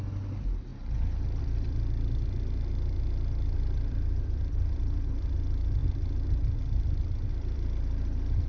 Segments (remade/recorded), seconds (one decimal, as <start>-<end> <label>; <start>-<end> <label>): 0.0-0.7 remade; 0.7-1.4 recorded; 1.4-5.8 remade; 5.8-7.3 recorded; 7.3-8.5 remade